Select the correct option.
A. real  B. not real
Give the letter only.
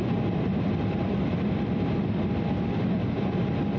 A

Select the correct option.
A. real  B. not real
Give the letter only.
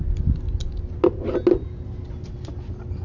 A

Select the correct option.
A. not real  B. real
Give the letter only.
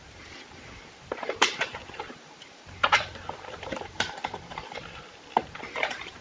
A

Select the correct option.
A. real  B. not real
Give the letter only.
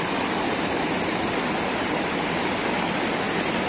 A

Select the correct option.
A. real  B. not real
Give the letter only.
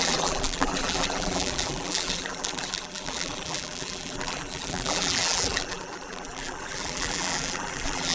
B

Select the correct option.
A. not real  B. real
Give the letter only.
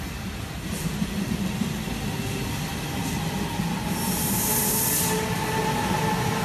B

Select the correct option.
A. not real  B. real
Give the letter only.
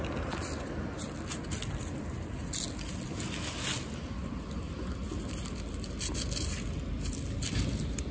B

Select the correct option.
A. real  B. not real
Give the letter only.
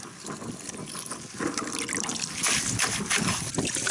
A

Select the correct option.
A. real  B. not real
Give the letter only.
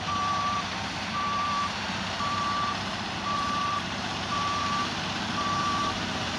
B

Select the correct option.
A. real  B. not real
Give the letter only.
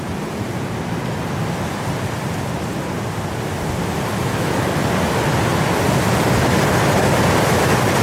A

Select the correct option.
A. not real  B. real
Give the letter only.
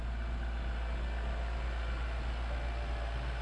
B